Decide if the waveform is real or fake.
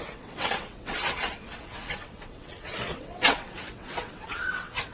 fake